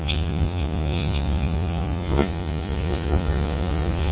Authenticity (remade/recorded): remade